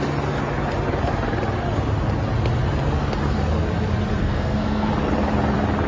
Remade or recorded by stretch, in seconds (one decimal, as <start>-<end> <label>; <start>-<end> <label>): 0.0-4.2 recorded; 4.2-4.9 remade; 4.9-5.9 recorded